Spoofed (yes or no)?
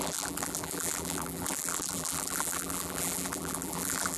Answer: yes